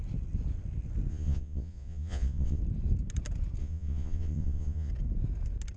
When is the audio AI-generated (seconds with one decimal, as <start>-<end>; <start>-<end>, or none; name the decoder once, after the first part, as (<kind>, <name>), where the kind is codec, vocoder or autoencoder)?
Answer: 1.1-2.6 (vocoder, Vocos); 3.6-4.9